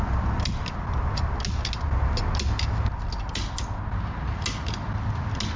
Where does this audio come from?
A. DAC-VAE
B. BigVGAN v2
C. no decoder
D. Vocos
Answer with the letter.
C